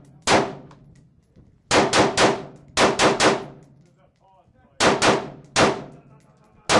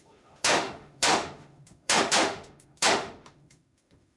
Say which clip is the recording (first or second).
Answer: first